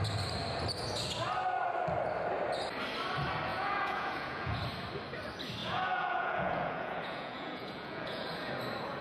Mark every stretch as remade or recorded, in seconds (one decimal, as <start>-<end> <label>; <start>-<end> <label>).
0.0-3.5 recorded; 3.5-4.6 remade; 4.6-5.6 recorded; 5.6-8.5 remade; 8.5-9.0 recorded